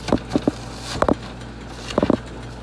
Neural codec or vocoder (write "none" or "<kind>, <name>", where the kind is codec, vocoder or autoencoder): none